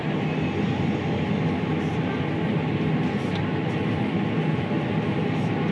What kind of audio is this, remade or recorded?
recorded